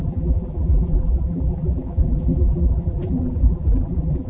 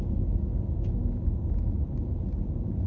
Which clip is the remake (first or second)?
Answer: first